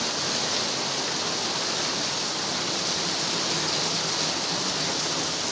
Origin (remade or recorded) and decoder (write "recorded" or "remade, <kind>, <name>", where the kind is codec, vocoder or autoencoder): recorded